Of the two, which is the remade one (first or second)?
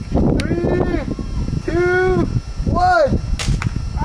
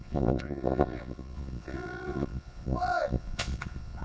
second